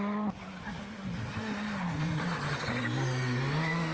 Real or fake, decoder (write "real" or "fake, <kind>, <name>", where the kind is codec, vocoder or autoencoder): real